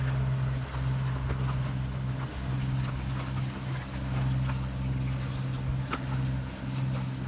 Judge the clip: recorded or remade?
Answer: recorded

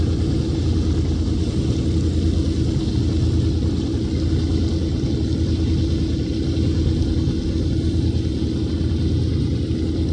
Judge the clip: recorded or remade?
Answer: recorded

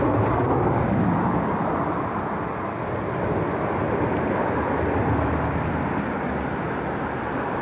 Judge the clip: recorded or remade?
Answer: recorded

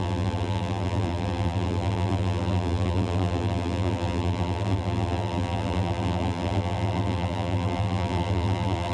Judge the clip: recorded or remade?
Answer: remade